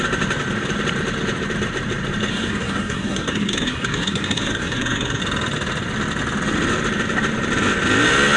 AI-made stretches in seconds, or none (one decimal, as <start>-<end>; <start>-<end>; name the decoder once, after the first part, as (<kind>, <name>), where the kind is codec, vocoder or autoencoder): 2.3-5.2 (codec, SNAC)